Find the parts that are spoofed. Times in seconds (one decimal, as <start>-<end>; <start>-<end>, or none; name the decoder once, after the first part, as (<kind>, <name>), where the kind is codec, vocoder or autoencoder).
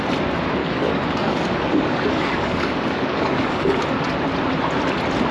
0.6-3.8 (codec, DAC)